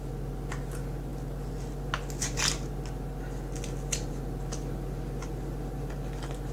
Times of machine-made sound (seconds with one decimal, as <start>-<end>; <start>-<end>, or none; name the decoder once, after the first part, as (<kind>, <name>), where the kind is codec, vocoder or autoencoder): none

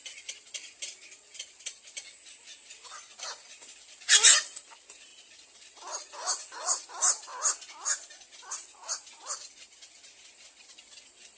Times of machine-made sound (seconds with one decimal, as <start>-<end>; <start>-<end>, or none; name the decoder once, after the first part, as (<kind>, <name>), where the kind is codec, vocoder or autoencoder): 0.0-7.3 (vocoder, BigVGAN v2); 9.5-11.4

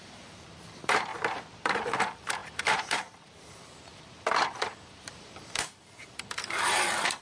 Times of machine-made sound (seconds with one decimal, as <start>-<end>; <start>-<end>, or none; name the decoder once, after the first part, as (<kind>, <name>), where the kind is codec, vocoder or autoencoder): 0.0-1.1 (vocoder, BigVGAN v2); 1.7-7.2

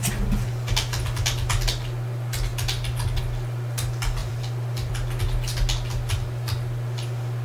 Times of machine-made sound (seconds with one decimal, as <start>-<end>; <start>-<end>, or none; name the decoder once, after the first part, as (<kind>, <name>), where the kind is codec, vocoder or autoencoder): 4.2-4.9 (vocoder, BigVGAN v2)

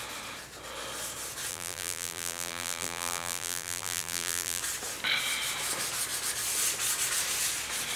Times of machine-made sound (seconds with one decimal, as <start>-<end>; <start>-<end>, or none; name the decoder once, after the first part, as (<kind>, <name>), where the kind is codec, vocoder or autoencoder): 1.5-4.6 (vocoder, BigVGAN v2)

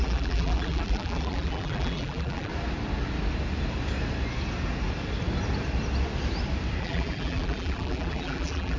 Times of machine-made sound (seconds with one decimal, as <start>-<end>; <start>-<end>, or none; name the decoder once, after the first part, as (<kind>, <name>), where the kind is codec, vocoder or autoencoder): 0.0-2.5 (vocoder, BigVGAN v2); 6.8-8.8